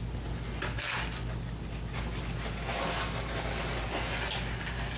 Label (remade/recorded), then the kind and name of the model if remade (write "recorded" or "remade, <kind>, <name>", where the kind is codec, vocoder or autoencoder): recorded